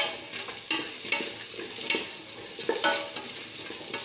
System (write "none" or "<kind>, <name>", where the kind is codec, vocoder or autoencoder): none